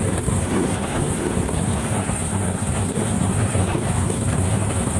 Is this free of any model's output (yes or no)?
no